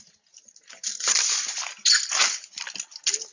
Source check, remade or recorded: recorded